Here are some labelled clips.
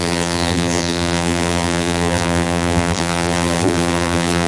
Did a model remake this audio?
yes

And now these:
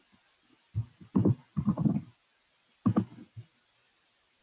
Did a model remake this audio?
no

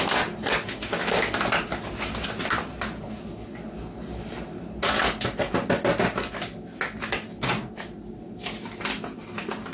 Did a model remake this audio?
no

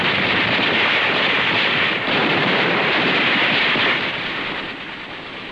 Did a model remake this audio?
yes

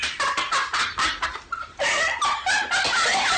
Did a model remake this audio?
no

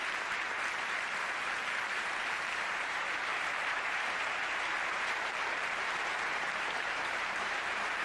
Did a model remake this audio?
yes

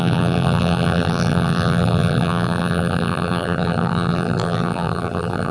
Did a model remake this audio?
yes